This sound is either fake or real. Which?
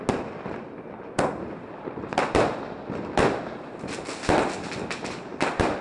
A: real